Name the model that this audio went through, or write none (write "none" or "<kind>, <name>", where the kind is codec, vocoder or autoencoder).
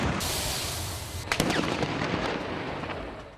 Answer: vocoder, BigVGAN v2